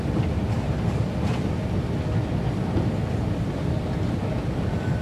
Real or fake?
real